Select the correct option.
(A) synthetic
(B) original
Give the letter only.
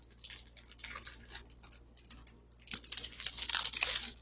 B